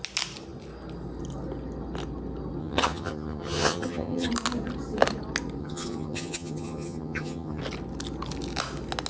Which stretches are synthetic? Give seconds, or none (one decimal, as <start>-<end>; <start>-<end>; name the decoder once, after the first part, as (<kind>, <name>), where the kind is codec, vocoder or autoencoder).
2.6-4.3 (vocoder, HiFi-GAN); 5.6-7.6